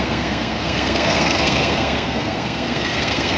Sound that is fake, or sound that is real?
fake